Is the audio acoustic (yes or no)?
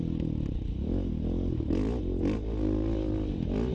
yes